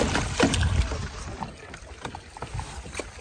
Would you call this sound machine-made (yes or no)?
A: no